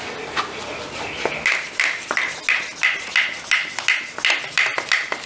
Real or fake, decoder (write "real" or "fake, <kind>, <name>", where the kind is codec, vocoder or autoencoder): real